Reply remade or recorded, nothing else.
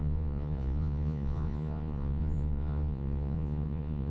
remade